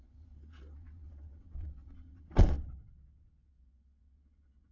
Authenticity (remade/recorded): remade